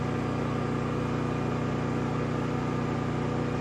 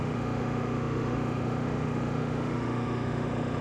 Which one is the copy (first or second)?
second